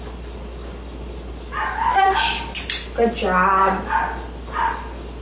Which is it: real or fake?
real